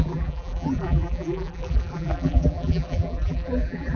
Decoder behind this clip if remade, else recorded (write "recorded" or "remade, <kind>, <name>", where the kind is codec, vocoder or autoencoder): remade, vocoder, BigVGAN v2